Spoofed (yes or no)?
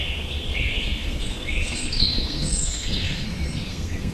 yes